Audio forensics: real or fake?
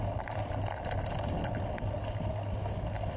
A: real